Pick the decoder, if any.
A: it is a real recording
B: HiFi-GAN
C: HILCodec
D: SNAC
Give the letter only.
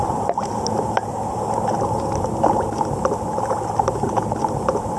A